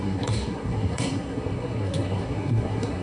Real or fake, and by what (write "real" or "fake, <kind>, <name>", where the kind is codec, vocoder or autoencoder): fake, codec, SNAC